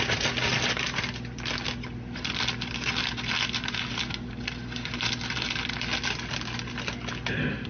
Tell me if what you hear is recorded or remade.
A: recorded